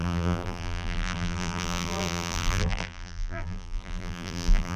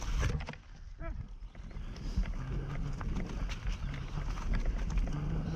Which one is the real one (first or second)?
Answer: second